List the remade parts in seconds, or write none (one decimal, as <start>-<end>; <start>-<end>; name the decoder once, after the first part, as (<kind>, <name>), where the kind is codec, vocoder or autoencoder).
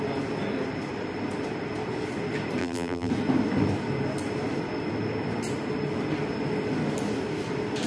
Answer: 2.6-3.1 (vocoder, BigVGAN v2)